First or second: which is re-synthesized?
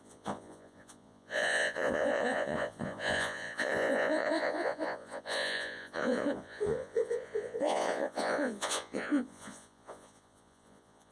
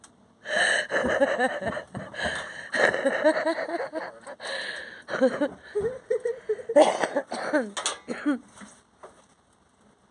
first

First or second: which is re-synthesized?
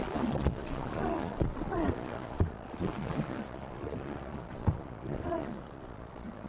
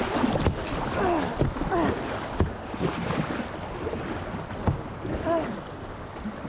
first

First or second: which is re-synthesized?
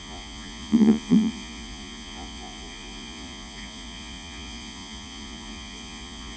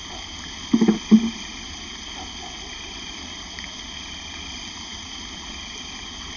first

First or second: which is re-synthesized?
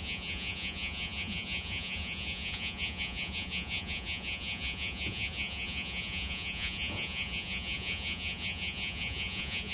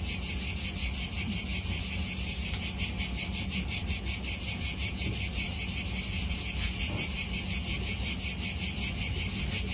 first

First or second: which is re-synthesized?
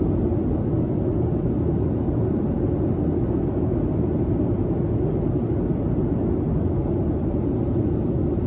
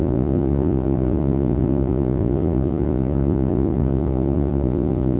second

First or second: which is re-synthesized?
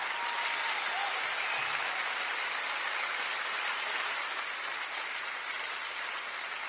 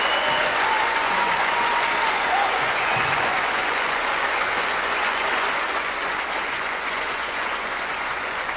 second